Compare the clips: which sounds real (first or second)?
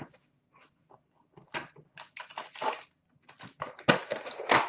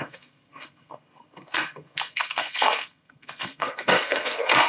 first